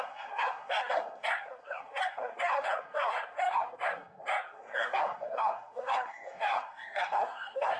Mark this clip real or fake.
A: fake